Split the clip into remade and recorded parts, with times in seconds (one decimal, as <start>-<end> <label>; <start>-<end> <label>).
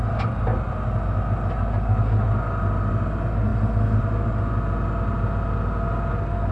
0.0-6.5 recorded